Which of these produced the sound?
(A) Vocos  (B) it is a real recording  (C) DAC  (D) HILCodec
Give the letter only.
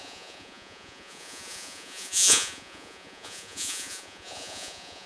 A